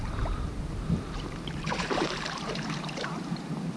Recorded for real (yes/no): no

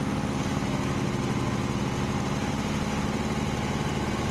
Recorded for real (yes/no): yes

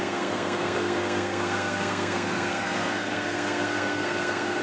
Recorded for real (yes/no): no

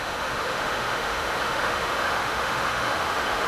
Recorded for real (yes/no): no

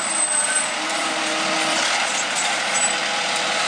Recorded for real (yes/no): yes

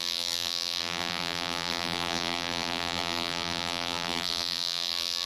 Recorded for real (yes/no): no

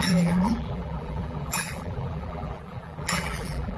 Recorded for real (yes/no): no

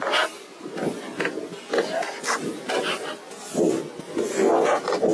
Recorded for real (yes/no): yes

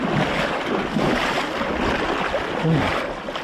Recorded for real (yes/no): yes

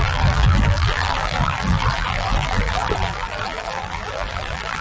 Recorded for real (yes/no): no